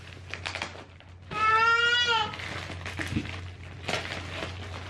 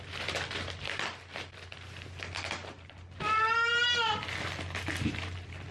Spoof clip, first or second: second